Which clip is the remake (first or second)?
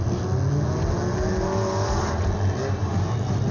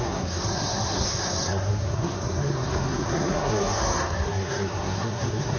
second